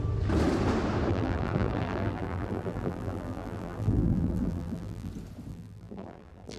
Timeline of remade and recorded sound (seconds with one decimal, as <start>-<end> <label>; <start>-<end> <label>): 0.0-1.1 recorded; 1.1-5.1 remade; 5.1-5.5 recorded; 5.5-6.6 remade